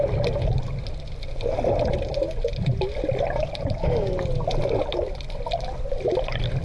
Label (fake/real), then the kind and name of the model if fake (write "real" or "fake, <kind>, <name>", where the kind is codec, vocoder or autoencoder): real